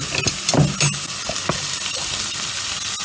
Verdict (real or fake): real